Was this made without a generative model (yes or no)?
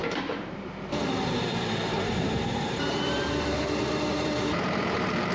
no